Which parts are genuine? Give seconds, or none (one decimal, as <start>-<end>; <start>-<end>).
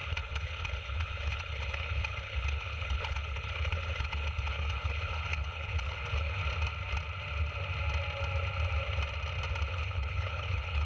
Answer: 6.4-9.7